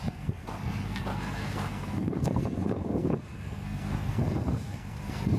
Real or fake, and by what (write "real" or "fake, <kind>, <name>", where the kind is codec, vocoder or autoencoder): fake, codec, SNAC